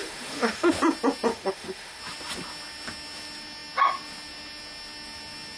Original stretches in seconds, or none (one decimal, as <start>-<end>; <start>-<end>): 0.7-1.3; 2.0-5.6